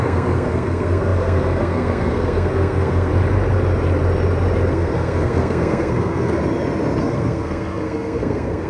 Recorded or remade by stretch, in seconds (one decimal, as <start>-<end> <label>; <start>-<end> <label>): 0.0-3.1 remade; 3.1-4.7 recorded; 4.7-6.4 remade; 6.4-7.0 recorded; 7.0-8.7 remade

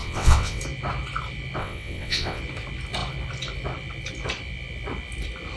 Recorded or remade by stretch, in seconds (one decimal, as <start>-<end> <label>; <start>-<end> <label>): 0.0-0.6 remade; 0.6-1.6 recorded; 1.6-2.4 remade; 2.4-5.6 recorded

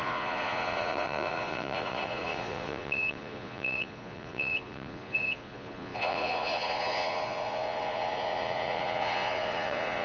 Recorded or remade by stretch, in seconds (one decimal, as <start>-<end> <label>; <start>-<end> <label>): 0.0-10.0 remade

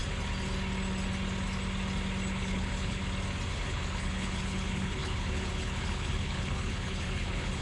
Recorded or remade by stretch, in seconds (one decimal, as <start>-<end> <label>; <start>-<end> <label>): 0.0-2.3 recorded; 2.3-3.0 remade; 3.0-3.5 recorded; 3.5-7.6 remade

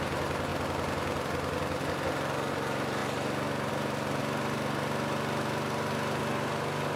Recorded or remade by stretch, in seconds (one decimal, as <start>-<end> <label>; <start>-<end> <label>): 0.0-7.0 recorded

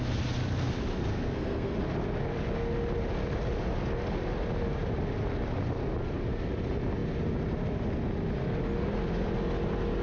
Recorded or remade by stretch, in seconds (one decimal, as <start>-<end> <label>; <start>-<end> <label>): 0.0-1.1 recorded; 1.1-1.8 remade; 1.8-10.0 recorded

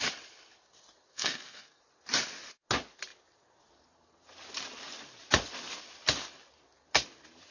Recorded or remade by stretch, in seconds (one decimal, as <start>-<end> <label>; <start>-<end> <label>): 0.0-1.1 recorded; 1.1-1.8 remade; 1.8-7.5 recorded